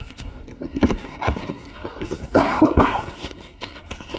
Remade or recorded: remade